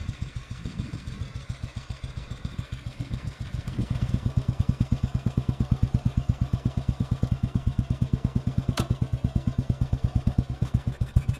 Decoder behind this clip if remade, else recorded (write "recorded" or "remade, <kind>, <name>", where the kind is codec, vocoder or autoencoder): remade, codec, SNAC